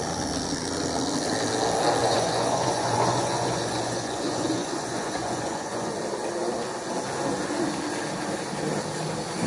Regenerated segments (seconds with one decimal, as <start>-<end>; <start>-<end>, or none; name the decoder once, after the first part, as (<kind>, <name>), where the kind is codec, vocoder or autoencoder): 2.0-6.0 (vocoder, Vocos)

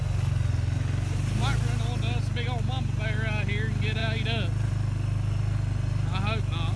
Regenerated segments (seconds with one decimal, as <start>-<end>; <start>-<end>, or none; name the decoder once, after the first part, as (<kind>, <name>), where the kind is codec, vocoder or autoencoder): none

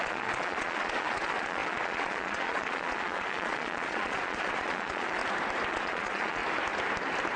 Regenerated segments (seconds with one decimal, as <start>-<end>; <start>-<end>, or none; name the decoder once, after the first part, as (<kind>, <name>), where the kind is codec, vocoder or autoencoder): 0.0-5.2 (vocoder, Vocos); 5.7-6.4

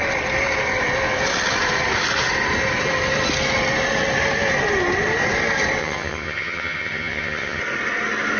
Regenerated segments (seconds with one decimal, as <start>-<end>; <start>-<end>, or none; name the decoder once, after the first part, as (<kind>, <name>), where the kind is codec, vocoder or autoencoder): 5.8-7.6 (vocoder, HiFi-GAN)

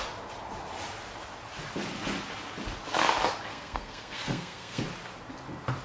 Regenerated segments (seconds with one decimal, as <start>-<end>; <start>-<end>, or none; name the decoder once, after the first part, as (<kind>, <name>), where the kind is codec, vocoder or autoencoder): 3.5-4.8 (codec, SNAC)

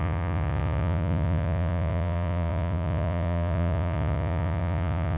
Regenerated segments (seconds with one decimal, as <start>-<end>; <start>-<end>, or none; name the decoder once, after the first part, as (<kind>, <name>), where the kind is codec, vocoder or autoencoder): 0.0-5.2 (vocoder, Vocos)

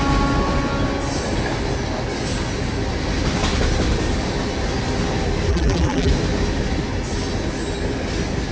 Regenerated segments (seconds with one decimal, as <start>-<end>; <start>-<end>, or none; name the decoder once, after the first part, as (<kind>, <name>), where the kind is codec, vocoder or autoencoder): 5.5-6.1 (vocoder, BigVGAN v2)